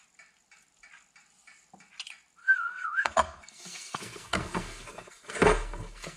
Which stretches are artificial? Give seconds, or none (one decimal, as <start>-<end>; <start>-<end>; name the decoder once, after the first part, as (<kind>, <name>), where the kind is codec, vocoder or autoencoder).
2.4-6.2 (codec, SNAC)